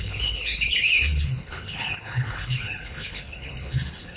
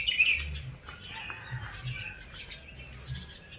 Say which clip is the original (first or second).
second